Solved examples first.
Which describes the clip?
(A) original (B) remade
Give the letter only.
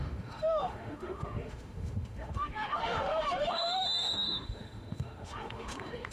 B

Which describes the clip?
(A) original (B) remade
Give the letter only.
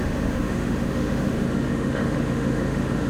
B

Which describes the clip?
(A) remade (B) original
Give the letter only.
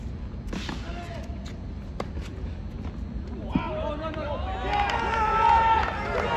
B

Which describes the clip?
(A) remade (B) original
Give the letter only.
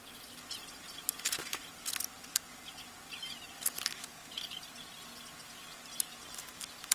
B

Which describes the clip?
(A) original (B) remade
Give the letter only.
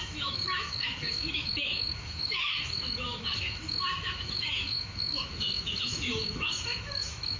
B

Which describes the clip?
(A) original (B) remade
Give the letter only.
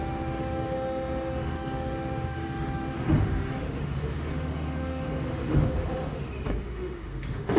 B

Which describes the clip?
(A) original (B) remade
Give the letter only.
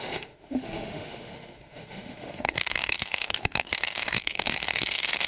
B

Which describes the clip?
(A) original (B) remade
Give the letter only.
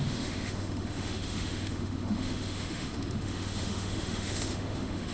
B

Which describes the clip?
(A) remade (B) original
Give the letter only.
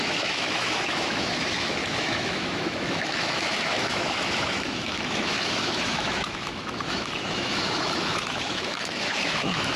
A